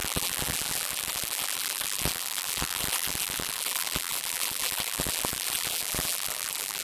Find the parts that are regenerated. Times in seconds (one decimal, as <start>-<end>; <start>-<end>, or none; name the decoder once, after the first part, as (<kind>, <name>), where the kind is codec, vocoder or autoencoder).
0.0-6.8 (vocoder, BigVGAN v2)